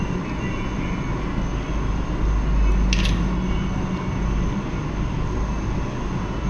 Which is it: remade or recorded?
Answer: recorded